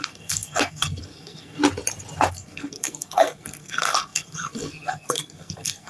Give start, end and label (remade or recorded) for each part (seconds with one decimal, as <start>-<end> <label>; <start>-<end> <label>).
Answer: 0.0-1.6 remade; 1.6-2.3 recorded; 2.3-5.9 remade